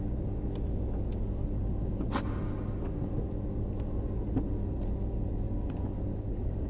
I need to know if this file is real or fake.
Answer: real